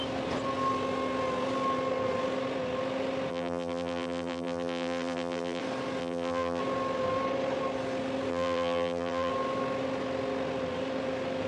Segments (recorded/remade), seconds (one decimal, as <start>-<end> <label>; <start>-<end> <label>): 0.0-3.3 recorded; 3.3-5.6 remade; 5.6-6.0 recorded; 6.0-6.6 remade; 6.6-8.3 recorded; 8.3-9.3 remade; 9.3-11.5 recorded